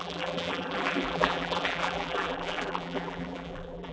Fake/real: fake